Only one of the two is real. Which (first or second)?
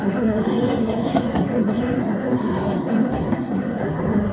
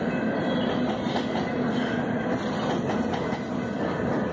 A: second